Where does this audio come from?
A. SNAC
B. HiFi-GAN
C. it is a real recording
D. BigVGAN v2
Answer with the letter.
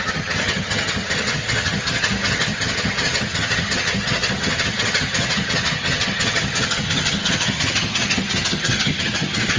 B